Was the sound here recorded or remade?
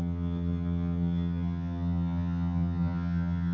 remade